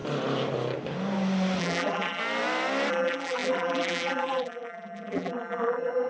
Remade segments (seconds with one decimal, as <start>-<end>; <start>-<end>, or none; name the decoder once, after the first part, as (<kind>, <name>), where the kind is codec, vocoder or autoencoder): 1.6-2.2 (vocoder, BigVGAN v2); 2.9-6.1